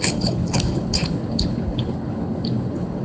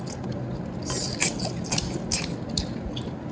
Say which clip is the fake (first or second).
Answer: first